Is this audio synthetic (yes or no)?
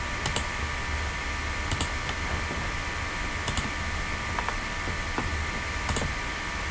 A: no